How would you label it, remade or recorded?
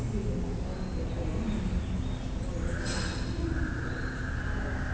recorded